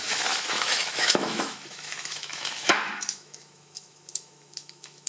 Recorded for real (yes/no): no